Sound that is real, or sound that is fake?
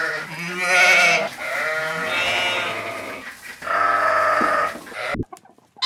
real